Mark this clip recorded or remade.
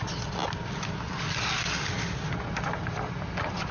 recorded